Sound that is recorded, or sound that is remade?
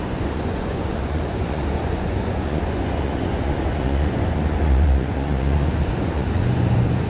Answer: remade